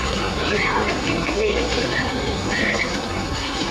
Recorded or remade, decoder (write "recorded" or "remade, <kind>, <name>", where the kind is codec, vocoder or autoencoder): remade, codec, SNAC